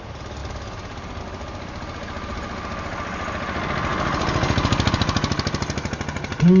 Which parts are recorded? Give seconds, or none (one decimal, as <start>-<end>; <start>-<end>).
0.0-6.6